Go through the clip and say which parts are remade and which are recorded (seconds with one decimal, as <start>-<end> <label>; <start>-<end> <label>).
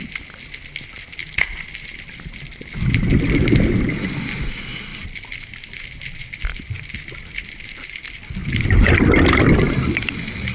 0.0-10.5 recorded